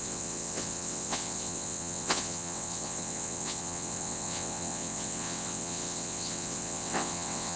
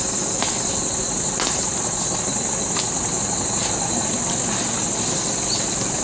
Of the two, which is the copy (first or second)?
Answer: first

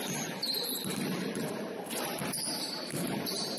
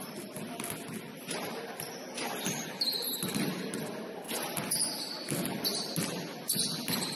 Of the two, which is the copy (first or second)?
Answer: first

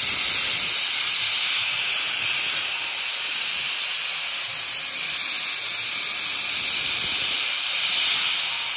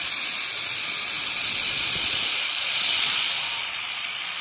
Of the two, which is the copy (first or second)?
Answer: second